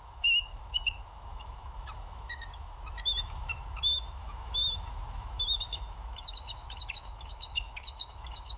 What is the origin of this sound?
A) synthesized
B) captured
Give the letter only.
A